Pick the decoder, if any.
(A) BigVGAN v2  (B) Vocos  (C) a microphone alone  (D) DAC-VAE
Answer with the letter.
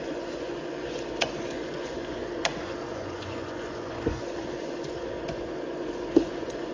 B